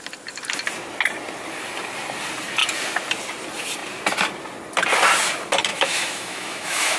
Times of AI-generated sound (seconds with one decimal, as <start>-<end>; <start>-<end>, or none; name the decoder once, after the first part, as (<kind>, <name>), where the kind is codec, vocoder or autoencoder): 5.7-7.0 (autoencoder, DAC-VAE)